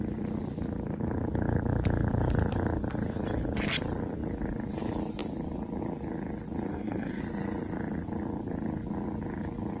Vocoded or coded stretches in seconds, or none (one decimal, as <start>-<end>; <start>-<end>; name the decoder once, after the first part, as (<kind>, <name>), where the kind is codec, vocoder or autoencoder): 6.7-7.2 (codec, SNAC)